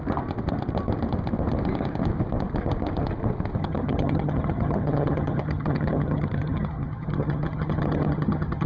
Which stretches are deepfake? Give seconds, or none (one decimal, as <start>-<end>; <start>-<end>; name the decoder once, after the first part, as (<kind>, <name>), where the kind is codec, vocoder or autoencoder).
3.6-8.7 (vocoder, HiFi-GAN)

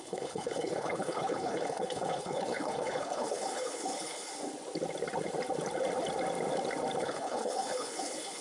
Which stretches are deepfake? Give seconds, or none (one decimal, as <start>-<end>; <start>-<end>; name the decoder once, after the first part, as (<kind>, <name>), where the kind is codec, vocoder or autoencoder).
0.0-4.3 (codec, HILCodec); 7.0-8.4

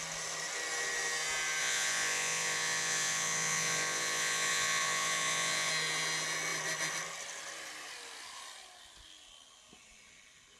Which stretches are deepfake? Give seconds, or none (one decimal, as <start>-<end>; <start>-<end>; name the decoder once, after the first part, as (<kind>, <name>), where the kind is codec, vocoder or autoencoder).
1.6-5.7 (vocoder, Vocos)

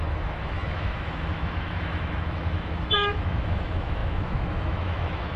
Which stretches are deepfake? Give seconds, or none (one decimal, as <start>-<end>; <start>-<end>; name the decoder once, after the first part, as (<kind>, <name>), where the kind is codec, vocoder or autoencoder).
0.0-5.4 (autoencoder, DAC-VAE)

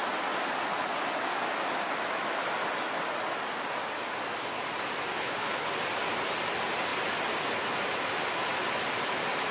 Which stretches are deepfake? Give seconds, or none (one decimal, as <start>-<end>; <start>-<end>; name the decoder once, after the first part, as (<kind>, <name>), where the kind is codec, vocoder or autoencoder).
5.1-5.7 (codec, HILCodec)

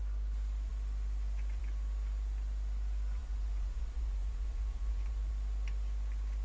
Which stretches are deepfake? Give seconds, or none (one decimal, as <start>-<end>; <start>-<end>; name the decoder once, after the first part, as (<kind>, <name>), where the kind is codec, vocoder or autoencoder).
3.2-5.3 (vocoder, Vocos)

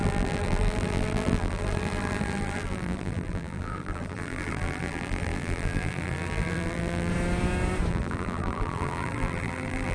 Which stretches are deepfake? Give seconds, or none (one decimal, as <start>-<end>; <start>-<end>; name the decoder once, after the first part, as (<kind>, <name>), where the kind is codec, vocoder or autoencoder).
0.0-7.1 (vocoder, BigVGAN v2); 7.9-9.9

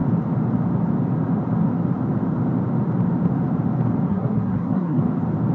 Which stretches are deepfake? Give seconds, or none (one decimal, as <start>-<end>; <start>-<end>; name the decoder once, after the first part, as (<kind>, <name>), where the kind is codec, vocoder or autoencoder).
4.1-5.0 (codec, SNAC)